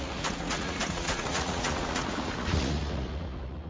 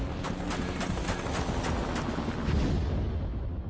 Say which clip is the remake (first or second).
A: first